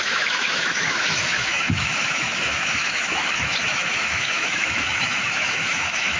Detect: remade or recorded remade